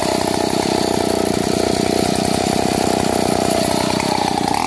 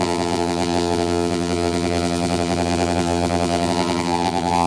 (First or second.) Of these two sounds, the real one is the first